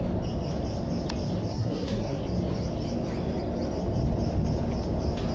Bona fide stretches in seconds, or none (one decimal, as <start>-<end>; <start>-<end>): 0.0-1.5; 2.2-5.3